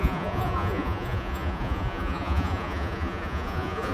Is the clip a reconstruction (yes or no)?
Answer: yes